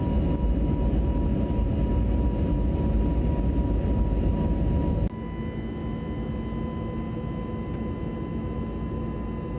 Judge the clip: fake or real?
real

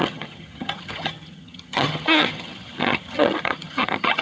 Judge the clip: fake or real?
fake